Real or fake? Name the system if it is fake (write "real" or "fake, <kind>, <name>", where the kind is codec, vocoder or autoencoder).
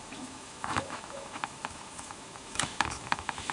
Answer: fake, autoencoder, DAC-VAE